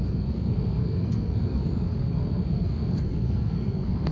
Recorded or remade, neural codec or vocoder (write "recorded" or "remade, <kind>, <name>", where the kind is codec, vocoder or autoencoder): remade, codec, SNAC